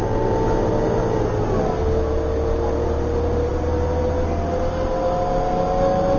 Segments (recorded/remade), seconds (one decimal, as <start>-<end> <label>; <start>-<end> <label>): 0.0-6.2 recorded